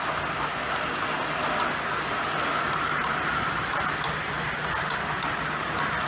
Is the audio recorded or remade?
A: recorded